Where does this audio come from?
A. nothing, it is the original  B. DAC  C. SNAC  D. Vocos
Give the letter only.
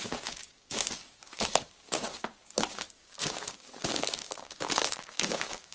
B